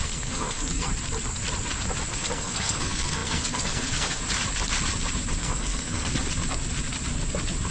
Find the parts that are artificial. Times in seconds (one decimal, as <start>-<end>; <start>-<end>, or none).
0.0-0.9; 2.1-4.2; 5.4-6.1